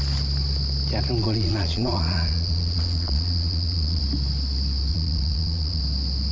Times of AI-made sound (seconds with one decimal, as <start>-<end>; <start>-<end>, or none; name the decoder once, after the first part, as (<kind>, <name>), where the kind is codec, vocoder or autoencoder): 1.2-4.0 (vocoder, Vocos); 4.9-5.8